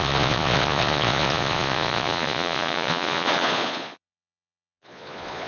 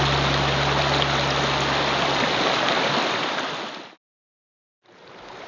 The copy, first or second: first